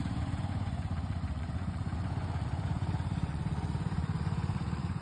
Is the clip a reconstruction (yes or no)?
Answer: yes